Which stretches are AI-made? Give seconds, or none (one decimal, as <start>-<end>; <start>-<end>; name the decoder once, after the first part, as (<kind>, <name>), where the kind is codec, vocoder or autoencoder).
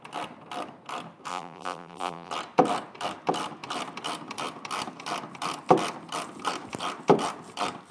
1.3-2.3 (vocoder, BigVGAN v2)